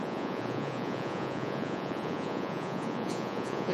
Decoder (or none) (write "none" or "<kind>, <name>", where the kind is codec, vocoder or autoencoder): vocoder, Vocos